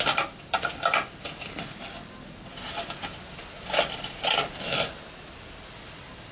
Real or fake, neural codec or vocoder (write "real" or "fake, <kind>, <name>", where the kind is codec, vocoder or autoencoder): real